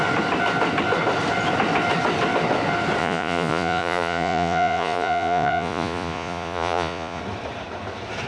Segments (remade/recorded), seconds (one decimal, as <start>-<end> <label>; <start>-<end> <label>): 0.0-3.0 recorded; 3.0-7.2 remade; 7.2-8.3 recorded